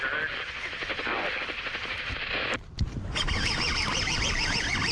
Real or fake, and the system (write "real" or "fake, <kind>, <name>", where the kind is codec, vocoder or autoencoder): real